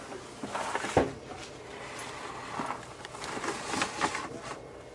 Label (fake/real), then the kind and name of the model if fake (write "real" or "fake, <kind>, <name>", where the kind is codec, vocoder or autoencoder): real